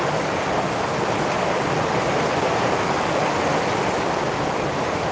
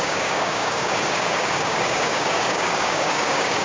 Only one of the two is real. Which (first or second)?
first